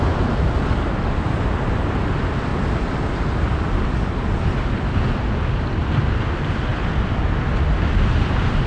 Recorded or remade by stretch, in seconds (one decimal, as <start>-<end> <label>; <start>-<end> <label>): 0.0-2.5 recorded; 2.5-4.9 remade; 4.9-8.7 recorded